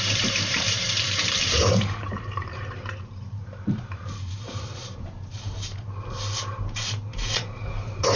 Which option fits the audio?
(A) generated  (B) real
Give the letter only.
A